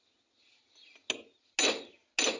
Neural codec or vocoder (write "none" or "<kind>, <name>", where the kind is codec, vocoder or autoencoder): none